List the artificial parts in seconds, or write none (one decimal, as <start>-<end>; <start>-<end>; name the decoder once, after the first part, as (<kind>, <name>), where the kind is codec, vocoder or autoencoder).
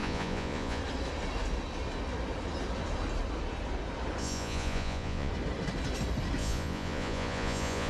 0.0-0.8 (vocoder, Vocos); 4.2-5.3; 6.4-7.9